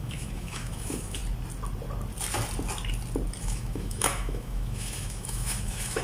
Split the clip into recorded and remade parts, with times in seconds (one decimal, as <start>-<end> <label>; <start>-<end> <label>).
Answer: 0.0-1.2 remade; 1.2-3.4 recorded; 3.4-6.0 remade